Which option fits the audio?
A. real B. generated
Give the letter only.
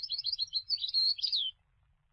B